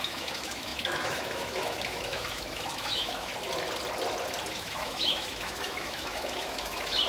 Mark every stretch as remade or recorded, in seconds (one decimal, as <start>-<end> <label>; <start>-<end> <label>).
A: 0.0-3.3 remade; 3.3-4.5 recorded; 4.5-7.1 remade